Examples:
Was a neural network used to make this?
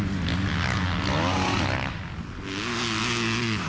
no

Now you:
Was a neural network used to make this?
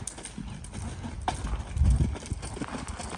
no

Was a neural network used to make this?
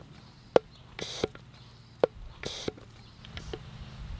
no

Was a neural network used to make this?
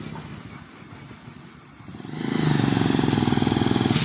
no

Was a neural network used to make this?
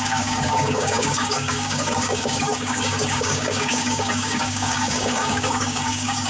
yes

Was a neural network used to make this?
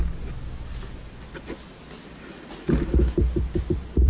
no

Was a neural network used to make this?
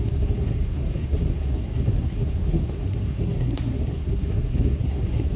yes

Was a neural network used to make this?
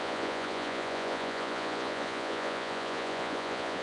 yes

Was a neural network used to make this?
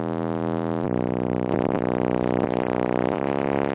no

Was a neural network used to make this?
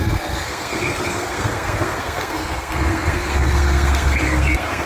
yes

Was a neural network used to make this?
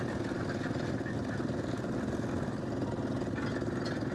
no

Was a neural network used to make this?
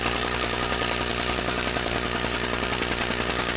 no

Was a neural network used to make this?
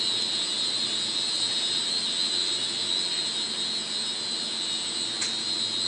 no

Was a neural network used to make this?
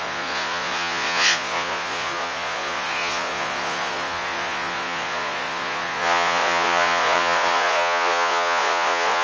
yes